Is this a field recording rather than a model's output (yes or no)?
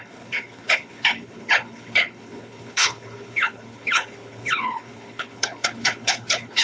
no